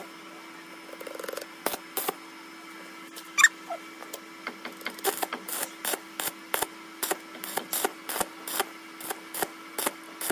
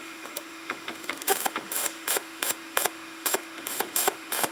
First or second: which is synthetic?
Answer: second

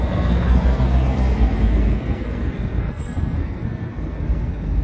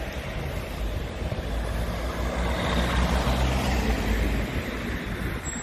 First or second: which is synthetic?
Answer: first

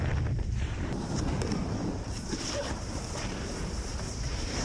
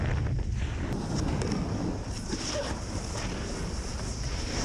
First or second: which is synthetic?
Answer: first